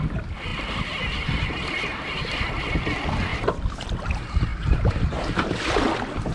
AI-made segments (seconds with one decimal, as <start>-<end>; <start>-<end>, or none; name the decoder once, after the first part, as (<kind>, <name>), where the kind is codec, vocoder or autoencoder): 3.3-3.9 (vocoder, BigVGAN v2); 4.5-5.2